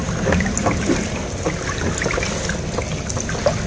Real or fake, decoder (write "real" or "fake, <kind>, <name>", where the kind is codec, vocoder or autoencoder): real